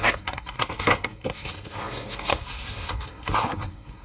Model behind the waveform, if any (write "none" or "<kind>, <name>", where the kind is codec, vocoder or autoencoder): codec, SNAC